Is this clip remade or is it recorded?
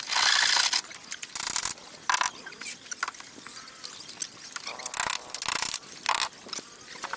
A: recorded